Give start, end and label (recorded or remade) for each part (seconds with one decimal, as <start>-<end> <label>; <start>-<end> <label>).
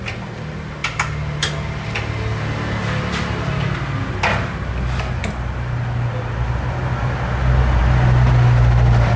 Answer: 0.0-9.2 recorded